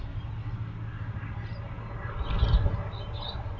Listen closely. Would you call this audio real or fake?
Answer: real